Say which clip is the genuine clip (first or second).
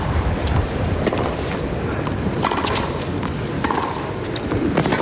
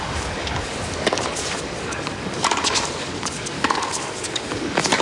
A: first